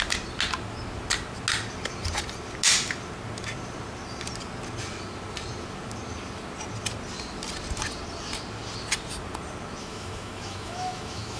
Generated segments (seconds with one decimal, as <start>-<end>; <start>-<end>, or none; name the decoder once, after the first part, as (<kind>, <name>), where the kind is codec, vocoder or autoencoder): 9.8-11.4 (autoencoder, DAC-VAE)